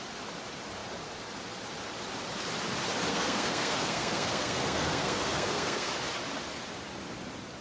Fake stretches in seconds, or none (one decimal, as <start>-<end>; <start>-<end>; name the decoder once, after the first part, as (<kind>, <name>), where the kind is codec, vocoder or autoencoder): 3.1-5.9 (codec, SNAC)